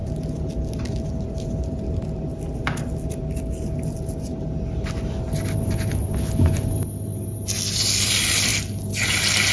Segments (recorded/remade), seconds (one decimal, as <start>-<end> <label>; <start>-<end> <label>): 0.0-9.5 recorded